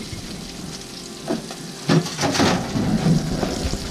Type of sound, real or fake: real